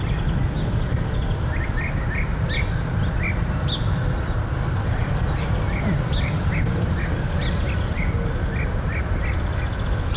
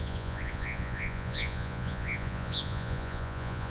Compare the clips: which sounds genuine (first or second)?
first